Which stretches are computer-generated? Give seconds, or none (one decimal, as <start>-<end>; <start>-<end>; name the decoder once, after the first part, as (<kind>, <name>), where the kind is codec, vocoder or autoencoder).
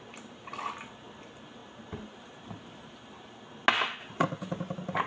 1.6-3.3 (vocoder, BigVGAN v2)